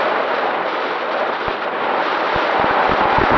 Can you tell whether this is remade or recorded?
recorded